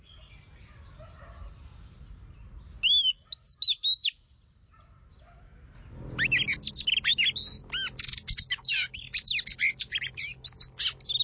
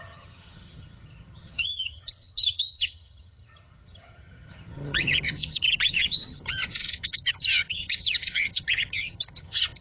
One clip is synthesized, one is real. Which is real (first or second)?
first